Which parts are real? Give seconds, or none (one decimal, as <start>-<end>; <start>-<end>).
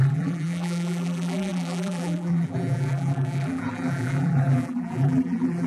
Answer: none